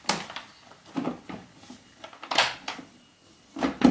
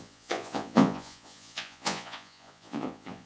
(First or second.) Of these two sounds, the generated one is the second